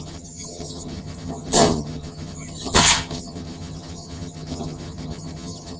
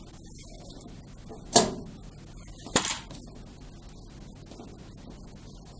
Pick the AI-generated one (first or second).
first